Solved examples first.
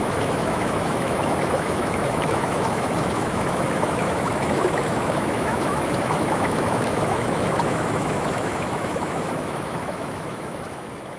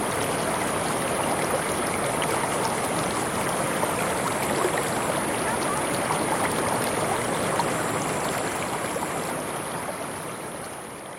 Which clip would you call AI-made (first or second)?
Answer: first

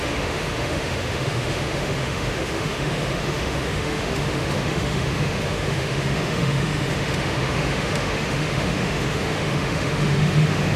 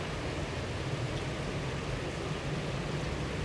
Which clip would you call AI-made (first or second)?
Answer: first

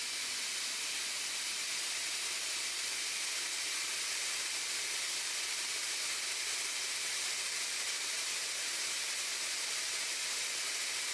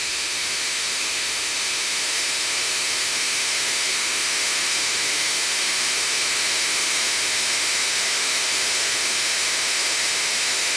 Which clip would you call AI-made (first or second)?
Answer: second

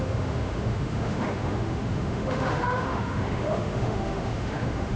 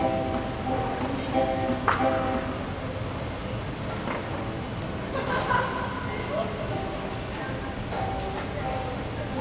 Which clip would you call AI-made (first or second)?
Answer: first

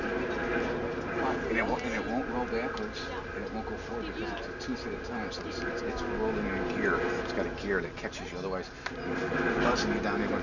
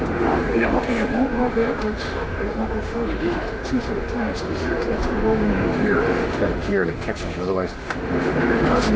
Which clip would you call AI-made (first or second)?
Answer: second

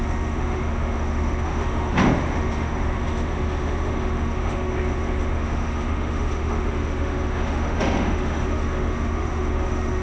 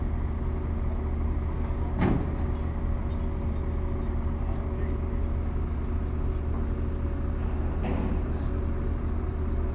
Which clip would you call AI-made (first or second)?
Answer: first